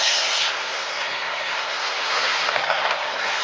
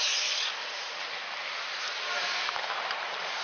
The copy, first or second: first